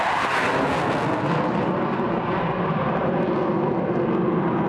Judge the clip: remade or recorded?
recorded